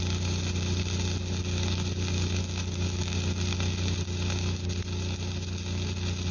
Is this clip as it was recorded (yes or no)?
yes